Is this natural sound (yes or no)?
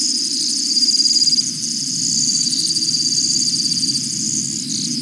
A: yes